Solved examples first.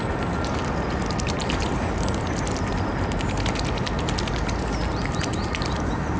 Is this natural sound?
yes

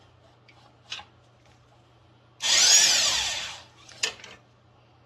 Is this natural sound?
yes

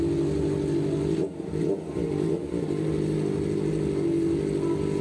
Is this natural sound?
yes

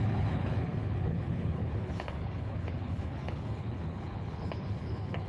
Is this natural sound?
no